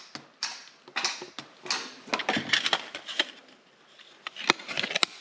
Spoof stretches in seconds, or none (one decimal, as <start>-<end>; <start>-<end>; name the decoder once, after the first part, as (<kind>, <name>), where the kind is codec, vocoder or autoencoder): none